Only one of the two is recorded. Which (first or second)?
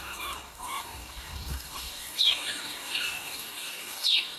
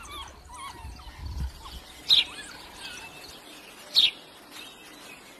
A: second